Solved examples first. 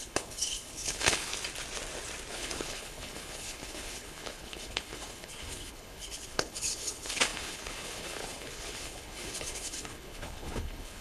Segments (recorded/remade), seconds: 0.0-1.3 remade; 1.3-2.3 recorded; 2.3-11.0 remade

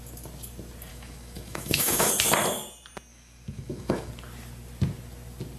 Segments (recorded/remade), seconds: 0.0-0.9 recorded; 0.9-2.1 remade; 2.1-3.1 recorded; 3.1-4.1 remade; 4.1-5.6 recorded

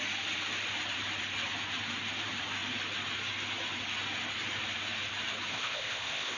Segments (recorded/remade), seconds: 0.0-5.5 recorded; 5.5-6.4 remade

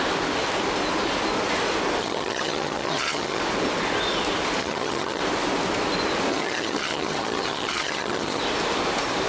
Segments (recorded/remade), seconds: 0.0-2.0 recorded; 2.0-3.4 remade; 3.4-4.6 recorded; 4.6-5.2 remade; 5.2-6.3 recorded; 6.3-8.4 remade; 8.4-9.3 recorded

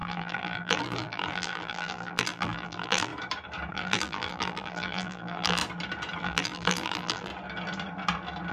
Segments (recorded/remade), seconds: 0.0-3.1 remade; 3.1-3.7 recorded; 3.7-5.6 remade; 5.6-6.2 recorded; 6.2-7.3 remade; 7.3-8.5 recorded